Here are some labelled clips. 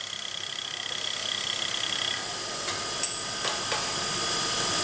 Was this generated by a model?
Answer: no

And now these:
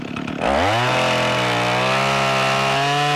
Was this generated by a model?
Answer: no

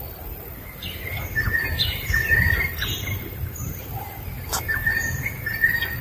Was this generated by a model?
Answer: no